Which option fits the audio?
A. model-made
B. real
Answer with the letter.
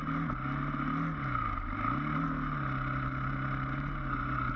B